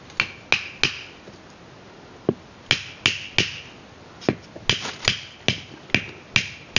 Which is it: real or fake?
real